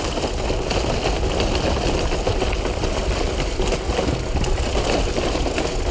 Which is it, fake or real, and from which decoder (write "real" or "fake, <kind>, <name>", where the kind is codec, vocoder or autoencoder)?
real